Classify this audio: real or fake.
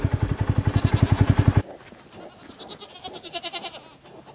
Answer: real